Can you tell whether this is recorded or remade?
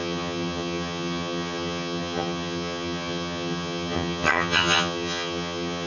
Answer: remade